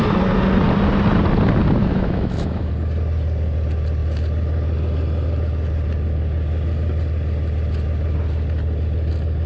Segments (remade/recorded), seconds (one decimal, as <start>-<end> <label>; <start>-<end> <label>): 0.0-1.8 recorded; 1.8-2.7 remade; 2.7-9.5 recorded